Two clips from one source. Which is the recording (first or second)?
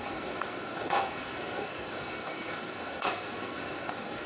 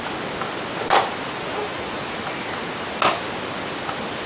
second